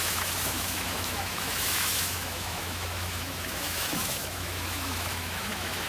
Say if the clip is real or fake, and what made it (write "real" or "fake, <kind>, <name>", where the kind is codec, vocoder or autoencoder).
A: fake, autoencoder, DAC-VAE